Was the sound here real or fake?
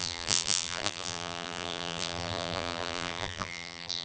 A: fake